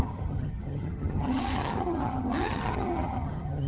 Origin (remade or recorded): remade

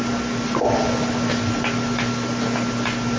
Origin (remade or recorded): recorded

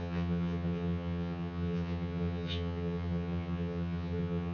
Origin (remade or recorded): remade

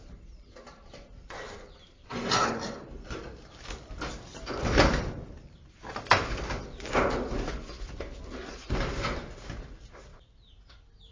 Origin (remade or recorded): recorded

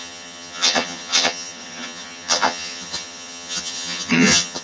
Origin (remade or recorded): remade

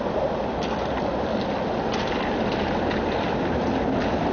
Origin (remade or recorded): recorded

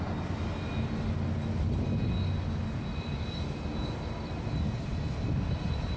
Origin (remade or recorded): recorded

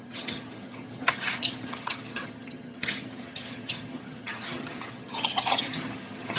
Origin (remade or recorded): remade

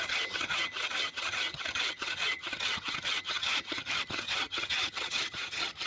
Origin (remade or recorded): remade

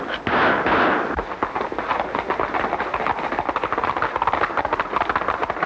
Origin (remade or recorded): recorded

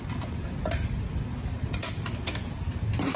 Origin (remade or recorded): recorded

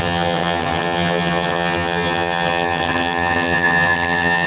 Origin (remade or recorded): remade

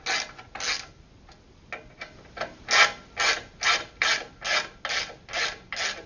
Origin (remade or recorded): recorded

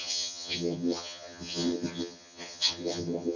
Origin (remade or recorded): remade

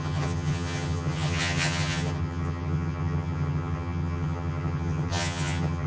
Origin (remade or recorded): remade